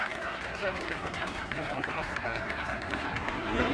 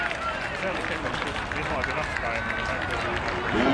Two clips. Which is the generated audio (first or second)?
first